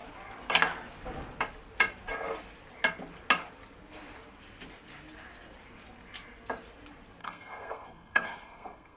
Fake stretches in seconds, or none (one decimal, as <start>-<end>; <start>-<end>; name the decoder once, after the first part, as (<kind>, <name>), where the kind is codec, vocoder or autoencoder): 7.2-9.0 (codec, SNAC)